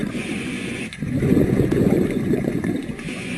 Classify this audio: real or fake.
fake